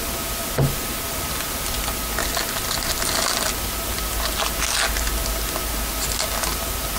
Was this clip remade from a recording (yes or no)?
no